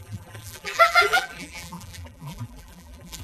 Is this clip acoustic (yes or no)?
no